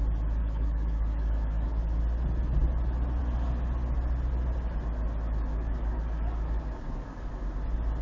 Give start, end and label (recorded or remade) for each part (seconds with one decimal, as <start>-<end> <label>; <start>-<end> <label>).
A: 0.0-0.4 recorded; 0.4-2.0 remade; 2.0-5.5 recorded; 5.5-7.3 remade; 7.3-8.0 recorded